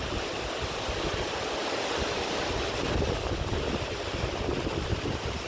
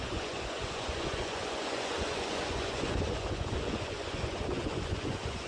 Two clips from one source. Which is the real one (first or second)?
first